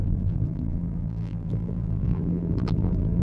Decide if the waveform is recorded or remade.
remade